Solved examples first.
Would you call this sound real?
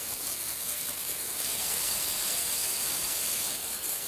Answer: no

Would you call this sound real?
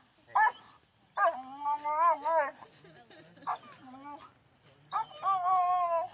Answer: yes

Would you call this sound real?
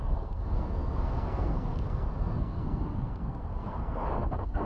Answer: no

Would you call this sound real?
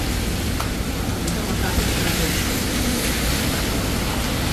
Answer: yes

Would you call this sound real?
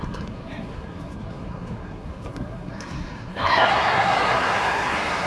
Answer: no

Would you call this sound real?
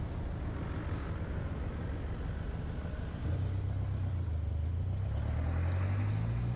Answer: yes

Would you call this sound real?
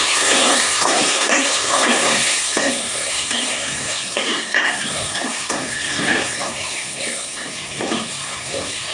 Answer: no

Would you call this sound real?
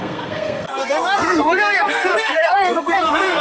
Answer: no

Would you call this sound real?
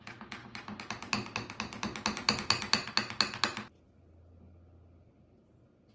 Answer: yes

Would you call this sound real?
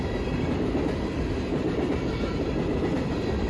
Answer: yes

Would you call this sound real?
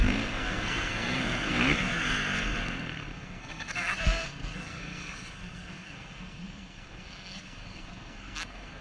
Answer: no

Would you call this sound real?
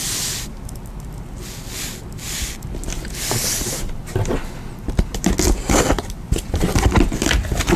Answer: yes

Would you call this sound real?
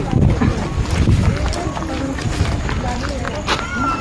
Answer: yes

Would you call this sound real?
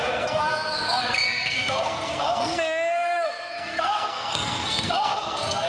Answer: no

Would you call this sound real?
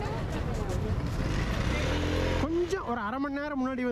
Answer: yes